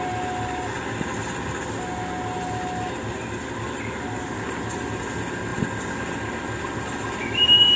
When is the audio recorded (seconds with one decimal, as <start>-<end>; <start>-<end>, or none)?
0.0-7.2